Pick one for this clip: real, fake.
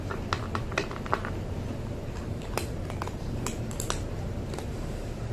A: real